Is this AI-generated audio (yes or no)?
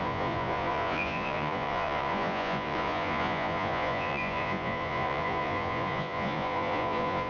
yes